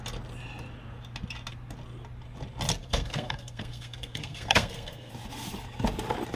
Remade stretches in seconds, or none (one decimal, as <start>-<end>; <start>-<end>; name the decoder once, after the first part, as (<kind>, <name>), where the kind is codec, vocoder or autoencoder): 2.8-5.1 (codec, SNAC)